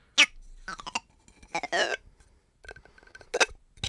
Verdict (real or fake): real